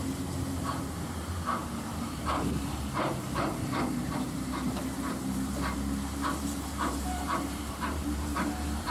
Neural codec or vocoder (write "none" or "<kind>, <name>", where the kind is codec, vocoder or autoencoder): vocoder, BigVGAN v2